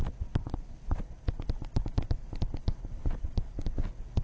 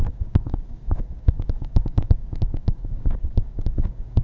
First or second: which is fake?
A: second